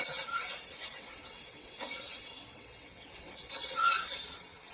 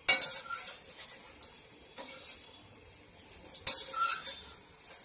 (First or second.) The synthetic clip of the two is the first